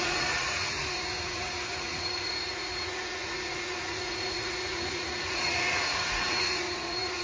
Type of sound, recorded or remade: remade